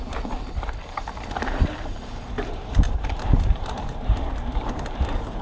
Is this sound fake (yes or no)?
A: yes